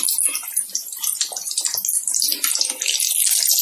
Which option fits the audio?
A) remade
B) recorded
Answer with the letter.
B